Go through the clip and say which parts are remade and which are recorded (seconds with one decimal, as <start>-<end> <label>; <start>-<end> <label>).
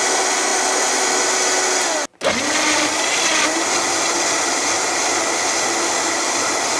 0.0-6.8 recorded